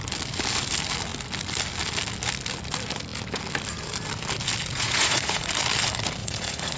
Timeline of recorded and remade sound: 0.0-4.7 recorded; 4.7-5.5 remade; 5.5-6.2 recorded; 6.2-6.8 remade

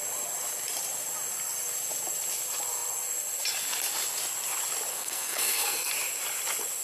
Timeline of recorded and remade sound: 0.0-4.9 recorded; 4.9-5.9 remade; 5.9-6.8 recorded